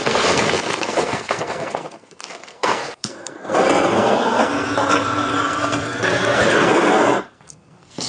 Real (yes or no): no